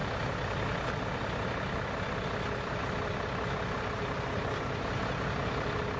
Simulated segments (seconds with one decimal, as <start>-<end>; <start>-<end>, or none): none